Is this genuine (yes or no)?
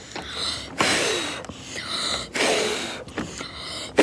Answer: yes